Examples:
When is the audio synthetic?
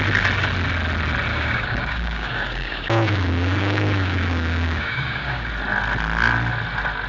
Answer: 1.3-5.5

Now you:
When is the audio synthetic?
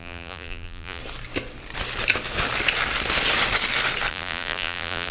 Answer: 0.0-1.0; 4.1-5.1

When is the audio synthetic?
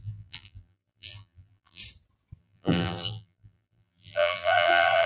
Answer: 0.0-1.8; 2.4-5.1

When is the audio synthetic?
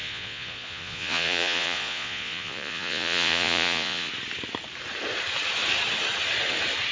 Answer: 0.0-4.1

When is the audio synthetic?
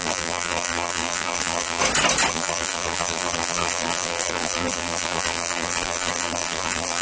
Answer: 0.0-1.8; 2.3-7.0